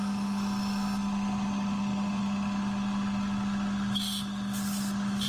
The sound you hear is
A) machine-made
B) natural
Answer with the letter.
B